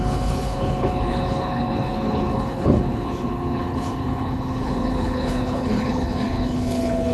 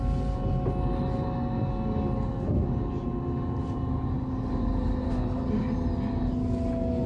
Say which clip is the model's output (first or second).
first